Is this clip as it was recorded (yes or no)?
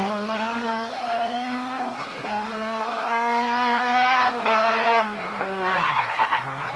no